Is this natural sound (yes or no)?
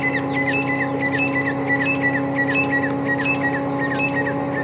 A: yes